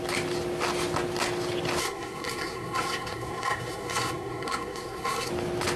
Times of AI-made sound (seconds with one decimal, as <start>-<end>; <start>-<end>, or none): 1.8-5.3